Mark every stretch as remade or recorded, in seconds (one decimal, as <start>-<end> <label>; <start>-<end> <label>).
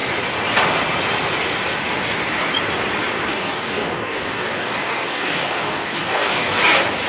0.0-3.3 recorded; 3.3-6.6 remade; 6.6-7.1 recorded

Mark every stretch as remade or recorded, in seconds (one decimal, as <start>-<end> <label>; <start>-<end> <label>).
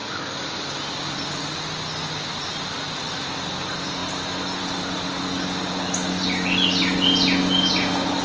0.0-8.2 recorded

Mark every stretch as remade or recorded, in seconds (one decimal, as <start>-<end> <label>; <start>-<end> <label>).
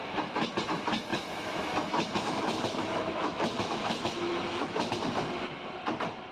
0.0-1.1 recorded; 1.1-4.9 remade; 4.9-6.3 recorded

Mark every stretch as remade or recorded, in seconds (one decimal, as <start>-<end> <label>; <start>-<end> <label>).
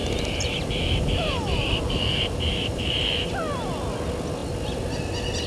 0.0-3.3 remade; 3.3-5.5 recorded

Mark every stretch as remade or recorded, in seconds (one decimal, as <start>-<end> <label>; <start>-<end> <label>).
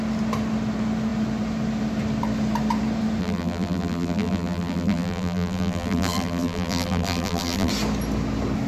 0.0-3.2 recorded; 3.2-7.7 remade; 7.7-8.7 recorded